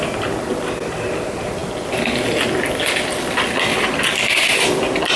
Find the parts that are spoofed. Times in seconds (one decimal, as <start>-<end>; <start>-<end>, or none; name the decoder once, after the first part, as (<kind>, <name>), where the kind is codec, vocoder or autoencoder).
none